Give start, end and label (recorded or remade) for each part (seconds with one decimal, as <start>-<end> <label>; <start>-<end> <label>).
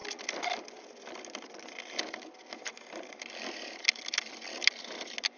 0.0-5.4 recorded